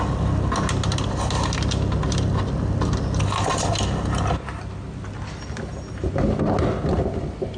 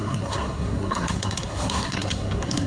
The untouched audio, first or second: first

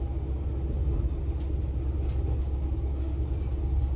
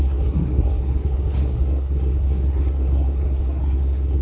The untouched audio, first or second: first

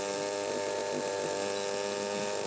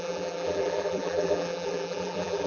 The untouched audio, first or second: first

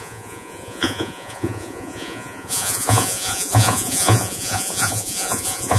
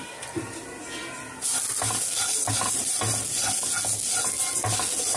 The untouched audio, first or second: second